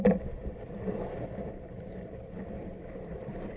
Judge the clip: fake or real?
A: fake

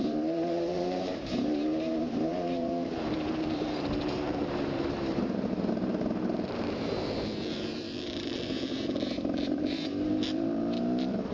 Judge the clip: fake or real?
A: fake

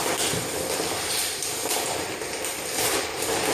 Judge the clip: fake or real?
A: fake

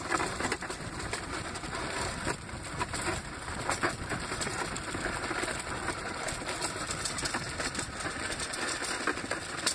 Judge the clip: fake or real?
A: real